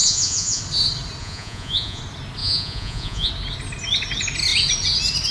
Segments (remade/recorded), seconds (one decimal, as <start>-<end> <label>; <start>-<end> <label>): 0.0-0.6 remade; 0.6-1.2 recorded; 1.2-2.0 remade; 2.0-2.4 recorded; 2.4-3.3 remade; 3.3-5.3 recorded